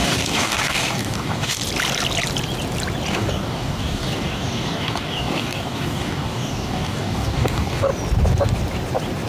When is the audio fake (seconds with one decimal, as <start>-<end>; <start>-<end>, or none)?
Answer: 0.0-1.6; 3.1-7.9